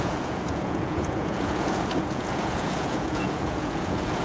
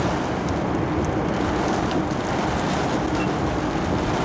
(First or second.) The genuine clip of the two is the second